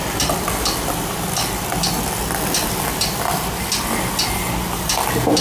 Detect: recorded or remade recorded